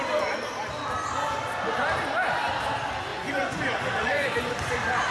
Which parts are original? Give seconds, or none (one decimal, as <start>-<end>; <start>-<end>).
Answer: 0.0-3.1; 4.5-5.1